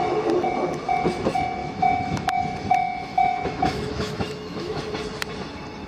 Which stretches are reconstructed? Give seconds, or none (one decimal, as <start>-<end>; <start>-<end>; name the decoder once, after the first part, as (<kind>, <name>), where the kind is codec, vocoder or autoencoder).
1.6-2.4 (autoencoder, DAC-VAE); 3.1-4.8